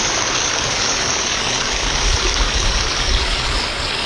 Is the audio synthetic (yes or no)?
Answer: yes